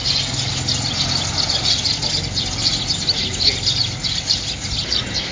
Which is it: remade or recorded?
recorded